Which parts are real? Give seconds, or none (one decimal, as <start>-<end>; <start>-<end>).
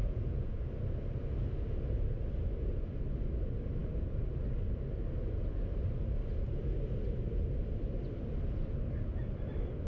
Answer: 0.6-9.9